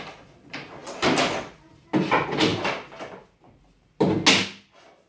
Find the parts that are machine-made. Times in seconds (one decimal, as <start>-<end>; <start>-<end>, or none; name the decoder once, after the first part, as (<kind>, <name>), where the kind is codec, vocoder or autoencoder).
none